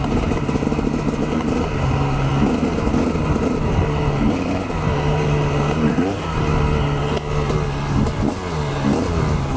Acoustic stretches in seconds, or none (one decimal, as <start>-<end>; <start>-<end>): 2.3-3.4; 6.5-8.7